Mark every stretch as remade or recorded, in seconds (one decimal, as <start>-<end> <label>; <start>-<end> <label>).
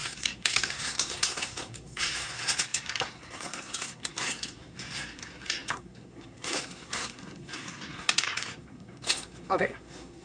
0.0-10.2 remade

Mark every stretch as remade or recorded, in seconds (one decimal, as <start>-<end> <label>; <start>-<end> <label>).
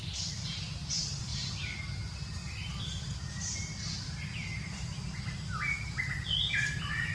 0.0-1.3 recorded; 1.3-1.8 remade; 1.8-7.1 recorded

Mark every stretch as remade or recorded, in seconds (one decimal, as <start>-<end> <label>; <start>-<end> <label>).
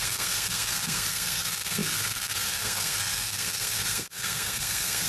0.0-5.1 remade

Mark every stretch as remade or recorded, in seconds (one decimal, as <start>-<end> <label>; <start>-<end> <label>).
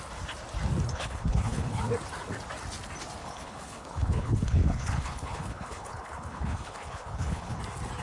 0.0-0.9 recorded; 0.9-1.8 remade; 1.8-3.2 recorded; 3.2-7.6 remade; 7.6-8.0 recorded